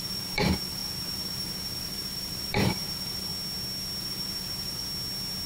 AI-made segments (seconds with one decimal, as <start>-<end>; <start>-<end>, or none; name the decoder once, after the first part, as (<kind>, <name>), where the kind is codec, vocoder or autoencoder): 0.0-3.3 (vocoder, BigVGAN v2); 4.0-4.8